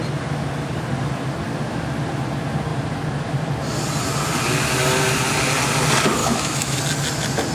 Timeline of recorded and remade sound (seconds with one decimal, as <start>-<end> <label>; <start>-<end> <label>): 0.0-6.2 recorded; 6.2-6.8 remade; 6.8-7.5 recorded